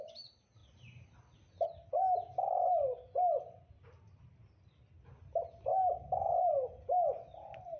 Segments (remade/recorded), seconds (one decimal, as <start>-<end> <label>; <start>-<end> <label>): 0.0-5.7 recorded; 5.7-6.3 remade; 6.3-7.8 recorded